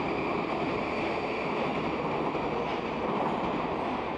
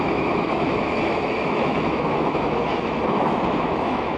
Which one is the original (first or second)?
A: first